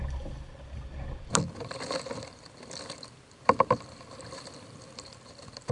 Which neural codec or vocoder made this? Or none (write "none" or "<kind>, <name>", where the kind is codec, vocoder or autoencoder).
none